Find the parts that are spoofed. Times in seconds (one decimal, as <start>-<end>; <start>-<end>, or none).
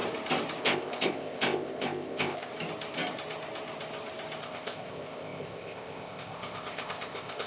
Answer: 0.6-2.5; 4.4-7.5